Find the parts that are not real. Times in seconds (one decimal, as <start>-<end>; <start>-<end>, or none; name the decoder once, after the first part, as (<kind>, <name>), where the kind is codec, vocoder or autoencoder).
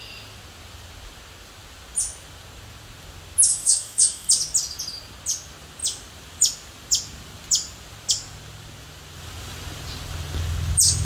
3.5-4.3 (codec, DAC)